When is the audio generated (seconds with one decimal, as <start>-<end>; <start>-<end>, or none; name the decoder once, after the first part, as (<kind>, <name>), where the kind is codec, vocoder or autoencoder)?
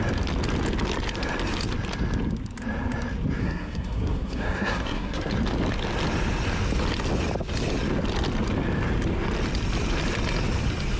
3.4-5.3 (codec, SNAC)